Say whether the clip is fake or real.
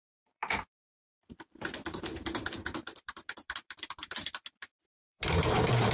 fake